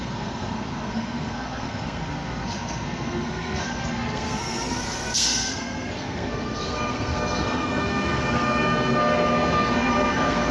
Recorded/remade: remade